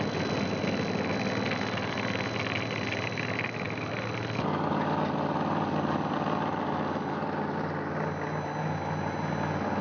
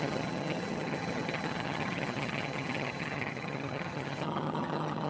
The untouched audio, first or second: first